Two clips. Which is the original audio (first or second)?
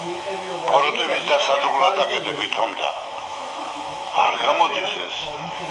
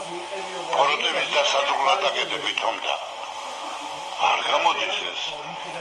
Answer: second